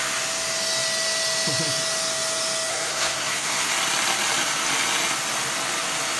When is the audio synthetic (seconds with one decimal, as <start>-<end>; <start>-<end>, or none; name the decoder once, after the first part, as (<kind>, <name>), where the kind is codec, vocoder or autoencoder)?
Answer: 2.7-3.7 (codec, SNAC)